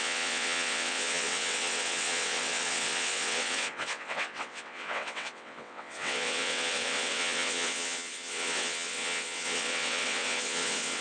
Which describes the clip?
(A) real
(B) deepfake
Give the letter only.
B